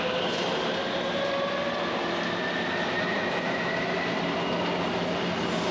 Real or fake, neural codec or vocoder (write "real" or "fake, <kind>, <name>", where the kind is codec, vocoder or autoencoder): real